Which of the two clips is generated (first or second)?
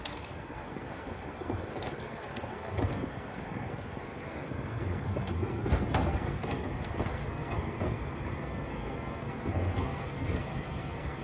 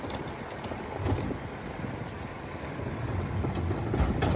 first